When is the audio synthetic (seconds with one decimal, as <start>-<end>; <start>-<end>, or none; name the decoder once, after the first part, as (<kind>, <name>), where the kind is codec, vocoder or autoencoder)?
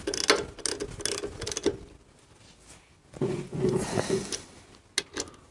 2.9-4.2 (vocoder, Vocos)